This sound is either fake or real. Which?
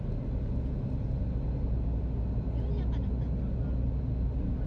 real